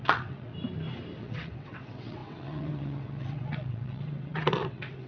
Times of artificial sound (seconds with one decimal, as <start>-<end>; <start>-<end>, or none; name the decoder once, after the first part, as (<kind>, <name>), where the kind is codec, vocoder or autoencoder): 0.0-0.5 (vocoder, WaveNeXt); 1.2-5.1

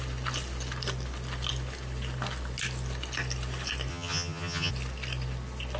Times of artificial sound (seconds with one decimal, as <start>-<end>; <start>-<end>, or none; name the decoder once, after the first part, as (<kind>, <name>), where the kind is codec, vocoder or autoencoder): 3.9-4.7 (vocoder, HiFi-GAN)

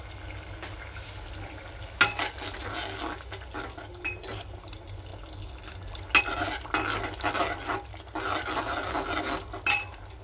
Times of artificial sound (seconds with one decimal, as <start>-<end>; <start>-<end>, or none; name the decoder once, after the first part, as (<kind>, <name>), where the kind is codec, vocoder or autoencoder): none

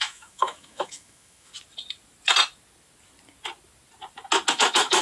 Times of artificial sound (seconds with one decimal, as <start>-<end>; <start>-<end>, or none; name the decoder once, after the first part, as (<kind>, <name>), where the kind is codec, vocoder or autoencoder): 0.0-1.5 (autoencoder, DAC-VAE); 4.5-5.0

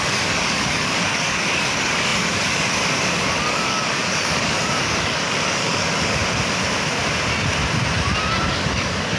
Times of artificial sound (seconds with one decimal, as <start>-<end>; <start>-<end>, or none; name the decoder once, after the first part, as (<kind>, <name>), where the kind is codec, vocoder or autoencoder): 0.0-6.2 (codec, DAC); 8.5-9.2

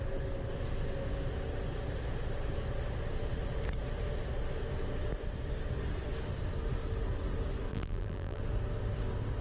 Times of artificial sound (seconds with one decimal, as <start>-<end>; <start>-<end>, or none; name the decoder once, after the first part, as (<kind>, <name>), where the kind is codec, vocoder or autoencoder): 7.7-8.4 (vocoder, BigVGAN v2)

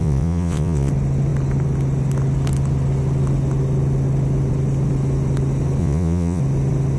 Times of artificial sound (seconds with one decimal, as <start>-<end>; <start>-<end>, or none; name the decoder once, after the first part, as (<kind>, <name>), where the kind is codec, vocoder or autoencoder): 0.0-0.9 (vocoder, Vocos); 5.8-6.4

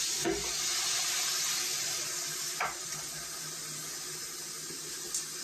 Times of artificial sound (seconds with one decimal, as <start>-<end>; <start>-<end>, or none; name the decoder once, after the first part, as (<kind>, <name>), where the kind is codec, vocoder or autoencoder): none